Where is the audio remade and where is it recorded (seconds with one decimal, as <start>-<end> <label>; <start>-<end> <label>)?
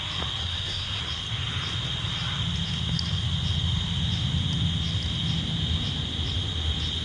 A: 0.0-0.4 recorded; 0.4-1.0 remade; 1.0-7.0 recorded